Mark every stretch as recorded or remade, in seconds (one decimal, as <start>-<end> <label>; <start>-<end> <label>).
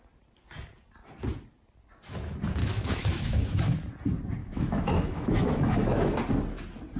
0.0-2.6 recorded; 2.6-3.8 remade; 3.8-4.4 recorded; 4.4-6.2 remade; 6.2-7.0 recorded